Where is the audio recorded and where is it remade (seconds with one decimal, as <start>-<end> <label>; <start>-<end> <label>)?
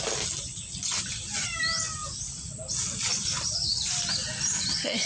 0.0-0.9 recorded; 0.9-1.6 remade; 1.6-2.0 recorded; 2.0-5.1 remade